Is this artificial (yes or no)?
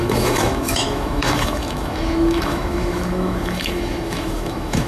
yes